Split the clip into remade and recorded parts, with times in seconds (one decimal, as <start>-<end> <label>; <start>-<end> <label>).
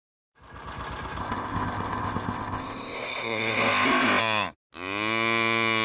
0.0-1.2 recorded; 1.2-4.2 remade; 4.2-5.8 recorded